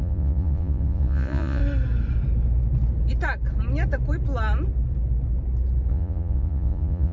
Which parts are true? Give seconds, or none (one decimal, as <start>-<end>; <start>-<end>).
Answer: 1.6-5.9